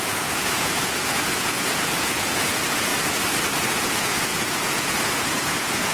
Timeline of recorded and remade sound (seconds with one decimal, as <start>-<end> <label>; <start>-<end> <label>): 0.0-2.9 remade; 2.9-3.7 recorded; 3.7-5.9 remade